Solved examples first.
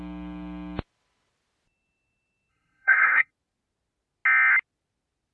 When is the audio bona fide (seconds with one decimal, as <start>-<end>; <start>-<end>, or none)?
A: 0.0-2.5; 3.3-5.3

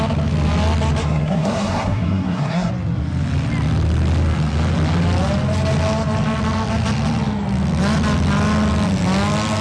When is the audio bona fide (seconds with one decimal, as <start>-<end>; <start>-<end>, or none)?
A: 0.0-1.0; 2.7-9.6

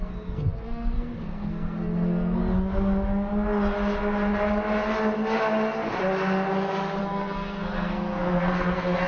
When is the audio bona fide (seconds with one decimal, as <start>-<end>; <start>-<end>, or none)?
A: 2.4-7.0

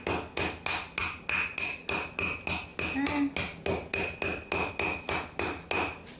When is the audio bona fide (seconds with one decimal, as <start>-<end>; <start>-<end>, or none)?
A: 0.0-6.2

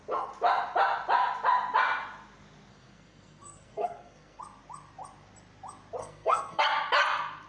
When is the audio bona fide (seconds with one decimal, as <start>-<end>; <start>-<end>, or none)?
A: 0.0-2.7; 4.4-6.0; 6.6-7.5

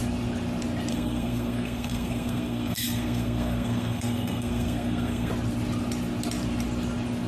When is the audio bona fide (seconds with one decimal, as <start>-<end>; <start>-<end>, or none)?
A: 0.0-0.9; 5.3-7.3